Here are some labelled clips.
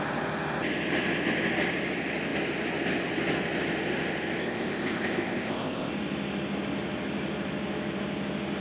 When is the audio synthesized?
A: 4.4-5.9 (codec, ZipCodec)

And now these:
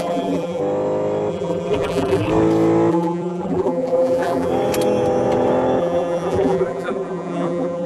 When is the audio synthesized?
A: 0.0-0.6 (vocoder, BigVGAN v2); 1.3-2.3; 2.9-4.5; 5.8-7.9

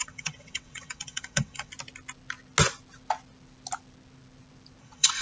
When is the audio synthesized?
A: 0.0-1.7 (vocoder, WaveNeXt); 4.8-5.2

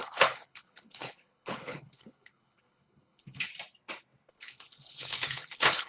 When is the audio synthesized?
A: 0.0-3.5 (codec, HILCodec); 4.3-5.9